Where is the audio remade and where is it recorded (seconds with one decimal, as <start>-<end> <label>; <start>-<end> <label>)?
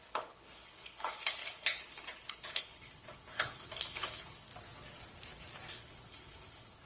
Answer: 0.0-4.5 remade; 4.5-5.7 recorded; 5.7-6.9 remade